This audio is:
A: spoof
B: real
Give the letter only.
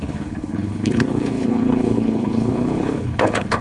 A